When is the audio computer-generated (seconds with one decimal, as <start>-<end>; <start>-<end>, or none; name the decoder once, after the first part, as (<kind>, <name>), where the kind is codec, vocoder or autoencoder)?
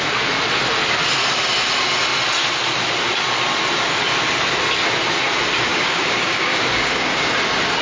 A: 5.7-7.3 (codec, DAC)